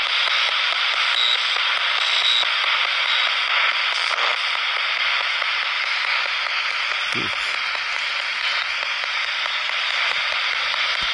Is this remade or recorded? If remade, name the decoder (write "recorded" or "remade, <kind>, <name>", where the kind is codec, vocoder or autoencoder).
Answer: recorded